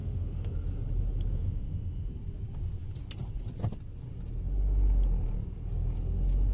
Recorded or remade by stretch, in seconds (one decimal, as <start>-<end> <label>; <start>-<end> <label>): 0.0-0.5 remade; 0.5-1.3 recorded; 1.3-2.1 remade; 2.1-6.5 recorded